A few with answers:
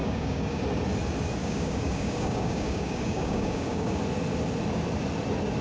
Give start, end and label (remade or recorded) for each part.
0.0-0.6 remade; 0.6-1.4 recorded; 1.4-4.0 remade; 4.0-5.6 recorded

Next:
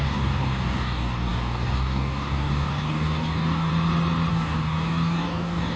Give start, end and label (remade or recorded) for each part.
0.0-3.7 remade; 3.7-4.3 recorded; 4.3-5.8 remade

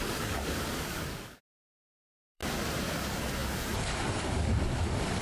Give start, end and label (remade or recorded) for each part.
0.0-2.4 remade; 2.4-2.9 recorded; 2.9-5.2 remade

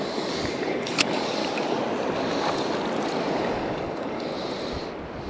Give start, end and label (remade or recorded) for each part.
0.0-1.4 remade; 1.4-3.4 recorded; 3.4-4.3 remade; 4.3-5.3 recorded

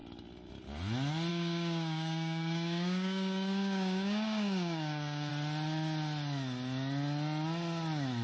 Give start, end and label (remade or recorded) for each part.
0.0-1.3 recorded; 1.3-5.3 remade; 5.3-8.2 recorded